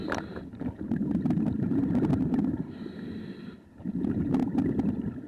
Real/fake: real